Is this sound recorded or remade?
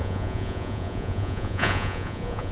remade